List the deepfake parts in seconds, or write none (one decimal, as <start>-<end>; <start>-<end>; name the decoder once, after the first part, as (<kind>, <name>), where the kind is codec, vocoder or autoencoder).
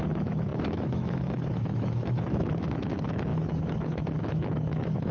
0.0-5.1 (autoencoder, DAC-VAE)